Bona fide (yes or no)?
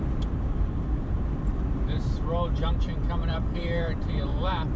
no